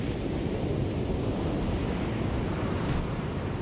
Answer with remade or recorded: recorded